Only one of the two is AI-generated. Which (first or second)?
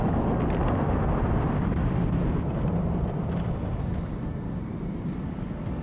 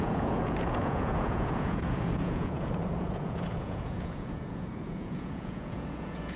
second